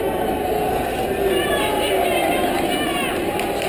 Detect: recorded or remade recorded